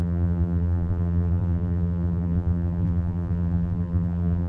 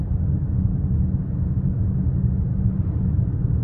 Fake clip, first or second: first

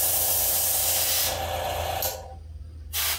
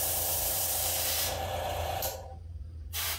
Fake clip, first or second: second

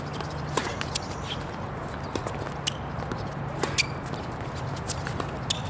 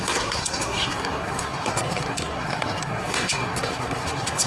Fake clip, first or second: second